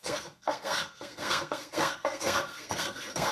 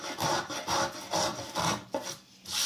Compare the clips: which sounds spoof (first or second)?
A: first